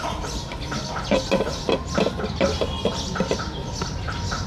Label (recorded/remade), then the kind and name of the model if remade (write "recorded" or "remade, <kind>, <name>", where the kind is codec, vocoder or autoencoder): recorded